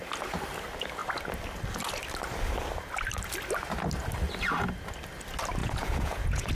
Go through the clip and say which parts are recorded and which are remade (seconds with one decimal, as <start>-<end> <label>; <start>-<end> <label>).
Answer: 0.0-5.6 recorded; 5.6-6.5 remade